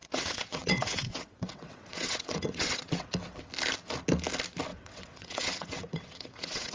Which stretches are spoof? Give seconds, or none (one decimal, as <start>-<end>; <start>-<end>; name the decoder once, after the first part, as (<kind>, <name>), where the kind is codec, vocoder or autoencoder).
0.0-3.5 (vocoder, WaveNeXt); 4.7-6.7